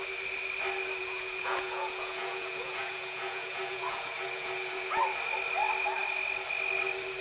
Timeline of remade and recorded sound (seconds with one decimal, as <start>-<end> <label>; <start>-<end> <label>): 0.0-1.0 recorded; 1.0-5.0 remade; 5.0-7.2 recorded